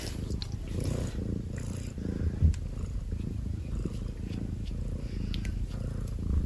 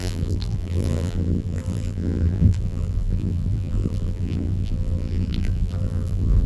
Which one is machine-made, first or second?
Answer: second